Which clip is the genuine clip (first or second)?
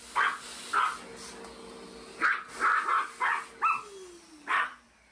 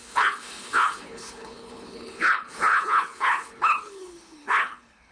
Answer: first